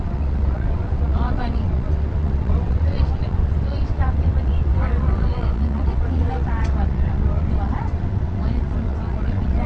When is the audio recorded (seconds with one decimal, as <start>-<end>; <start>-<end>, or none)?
none